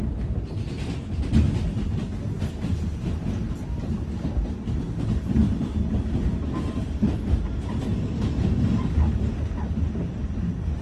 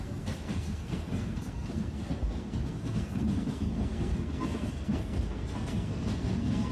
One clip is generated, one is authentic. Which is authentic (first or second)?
first